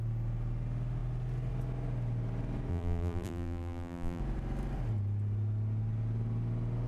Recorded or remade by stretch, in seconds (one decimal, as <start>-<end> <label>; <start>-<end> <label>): 0.0-2.7 recorded; 2.7-4.2 remade; 4.2-6.9 recorded